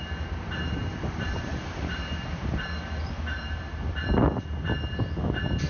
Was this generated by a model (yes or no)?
yes